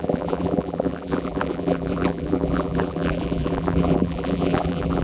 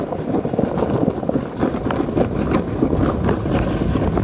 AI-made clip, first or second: first